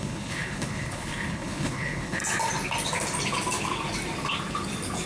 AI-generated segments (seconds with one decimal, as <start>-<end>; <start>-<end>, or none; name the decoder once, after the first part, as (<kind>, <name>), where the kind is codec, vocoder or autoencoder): 0.0-2.2 (codec, HILCodec)